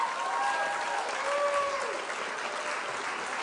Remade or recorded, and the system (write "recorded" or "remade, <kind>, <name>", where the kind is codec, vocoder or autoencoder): recorded